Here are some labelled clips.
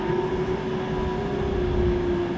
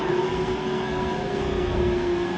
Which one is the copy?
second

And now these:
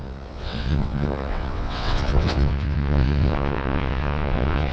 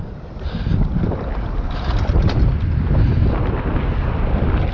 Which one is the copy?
first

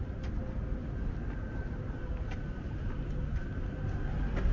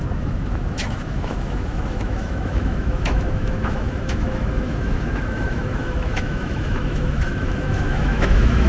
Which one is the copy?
second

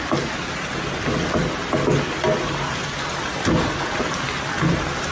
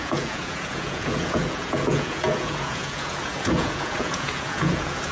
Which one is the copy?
second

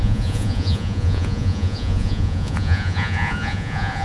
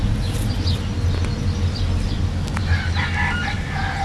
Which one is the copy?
first